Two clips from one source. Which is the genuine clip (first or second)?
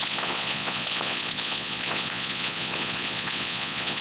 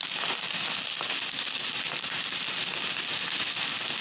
second